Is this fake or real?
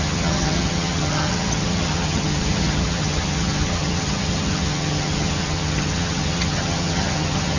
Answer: fake